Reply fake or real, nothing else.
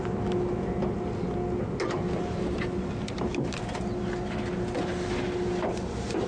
real